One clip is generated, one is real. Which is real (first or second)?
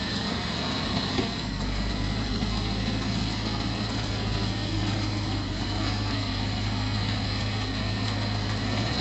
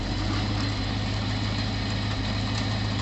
second